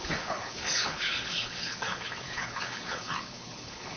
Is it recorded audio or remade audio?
remade